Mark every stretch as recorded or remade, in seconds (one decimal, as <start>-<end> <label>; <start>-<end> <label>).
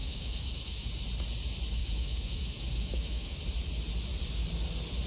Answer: 0.0-0.9 remade; 0.9-1.8 recorded; 1.8-3.4 remade; 3.4-5.1 recorded